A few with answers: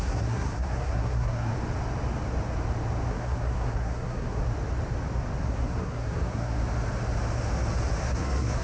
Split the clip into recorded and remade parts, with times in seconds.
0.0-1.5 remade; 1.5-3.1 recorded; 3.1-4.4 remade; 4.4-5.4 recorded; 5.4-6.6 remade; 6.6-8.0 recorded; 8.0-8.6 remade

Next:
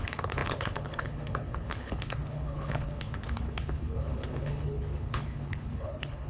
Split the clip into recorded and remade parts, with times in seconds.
0.0-6.3 remade

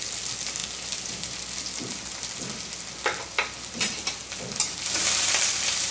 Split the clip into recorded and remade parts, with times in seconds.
0.0-5.9 remade

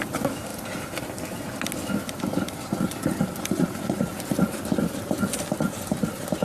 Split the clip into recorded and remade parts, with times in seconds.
0.0-0.5 recorded; 0.5-2.9 remade; 2.9-6.4 recorded

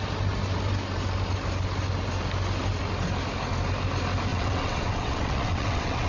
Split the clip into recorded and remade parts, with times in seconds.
0.0-4.3 recorded; 4.3-6.1 remade

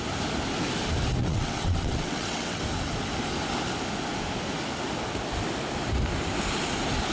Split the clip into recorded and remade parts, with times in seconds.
0.0-1.2 recorded; 1.2-2.6 remade; 2.6-7.1 recorded

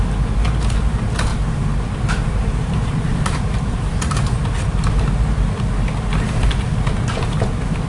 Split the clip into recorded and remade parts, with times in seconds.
0.0-1.3 recorded; 1.3-5.0 remade; 5.0-7.9 recorded

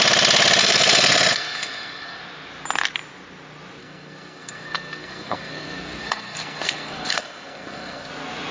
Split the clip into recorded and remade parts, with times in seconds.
0.0-0.6 recorded; 0.6-2.2 remade; 2.2-3.8 recorded; 3.8-8.1 remade; 8.1-8.5 recorded